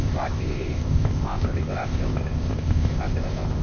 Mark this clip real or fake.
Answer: fake